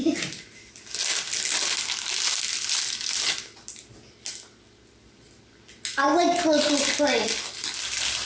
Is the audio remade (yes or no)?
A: no